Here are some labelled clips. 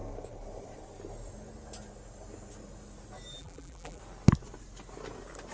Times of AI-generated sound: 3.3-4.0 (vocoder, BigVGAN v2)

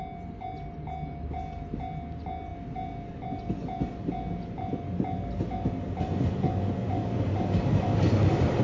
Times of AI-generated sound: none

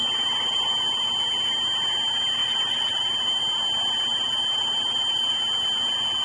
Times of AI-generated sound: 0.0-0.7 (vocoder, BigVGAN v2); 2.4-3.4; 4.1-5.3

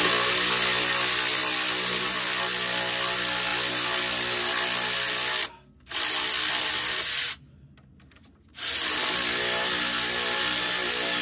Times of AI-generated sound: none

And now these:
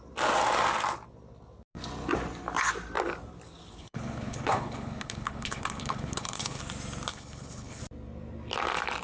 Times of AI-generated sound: 3.8-6.6 (codec, HILCodec); 7.1-7.8

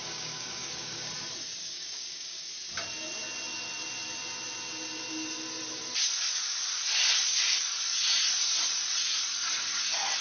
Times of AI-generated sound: 0.0-1.1 (codec, DAC); 1.6-2.5

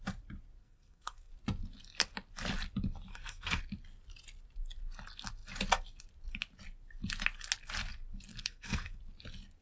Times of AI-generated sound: 0.6-1.3 (codec, SNAC); 3.1-3.6; 8.3-9.0

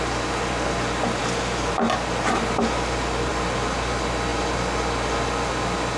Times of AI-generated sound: none